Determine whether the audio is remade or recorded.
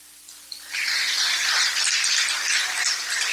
remade